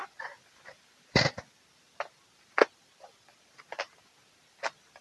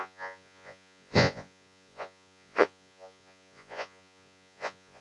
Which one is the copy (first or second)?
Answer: second